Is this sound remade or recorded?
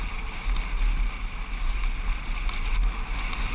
recorded